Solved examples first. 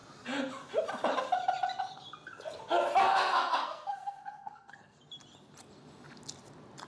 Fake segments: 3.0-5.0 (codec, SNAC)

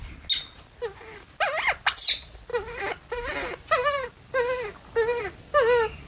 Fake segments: none